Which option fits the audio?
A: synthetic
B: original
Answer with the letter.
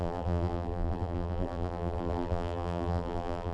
A